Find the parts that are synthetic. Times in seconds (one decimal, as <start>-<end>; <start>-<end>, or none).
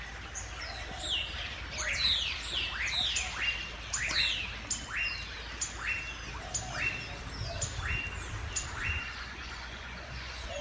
8.8-10.6